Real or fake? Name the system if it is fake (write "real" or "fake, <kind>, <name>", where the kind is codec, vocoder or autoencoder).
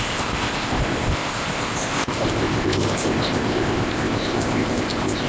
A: fake, codec, ZipCodec